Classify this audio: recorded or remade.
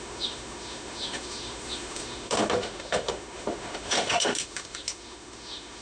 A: remade